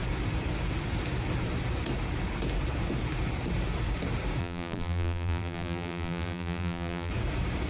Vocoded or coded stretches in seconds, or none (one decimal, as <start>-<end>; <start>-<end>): 4.4-7.1